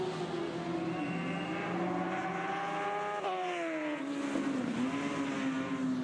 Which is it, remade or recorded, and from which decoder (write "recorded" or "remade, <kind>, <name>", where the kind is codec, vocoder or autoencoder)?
recorded